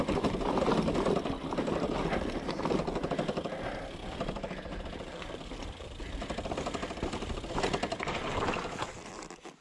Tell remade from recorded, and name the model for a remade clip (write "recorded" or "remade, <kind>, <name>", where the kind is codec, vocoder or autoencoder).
recorded